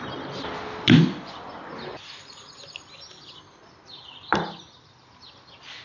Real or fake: real